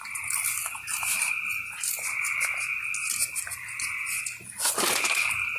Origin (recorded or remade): recorded